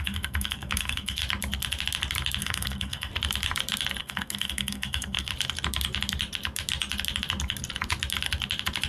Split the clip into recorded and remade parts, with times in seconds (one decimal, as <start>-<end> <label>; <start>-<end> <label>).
0.0-1.2 remade; 1.2-2.4 recorded; 2.4-3.1 remade; 3.1-4.0 recorded; 4.0-5.3 remade; 5.3-8.9 recorded